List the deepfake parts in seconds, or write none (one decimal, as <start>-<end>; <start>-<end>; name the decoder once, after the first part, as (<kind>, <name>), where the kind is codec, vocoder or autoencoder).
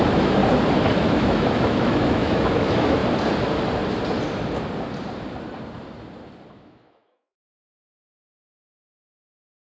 0.0-0.4 (autoencoder, DAC-VAE); 1.0-3.0; 6.5-9.6